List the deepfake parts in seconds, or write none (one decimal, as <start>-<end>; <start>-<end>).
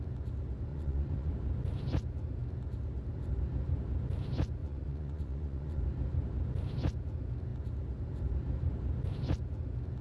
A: 0.7-1.3; 4.6-5.8